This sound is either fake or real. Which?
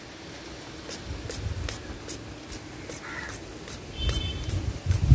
real